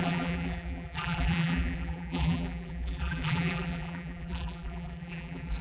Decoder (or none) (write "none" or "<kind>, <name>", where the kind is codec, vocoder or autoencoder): vocoder, BigVGAN v2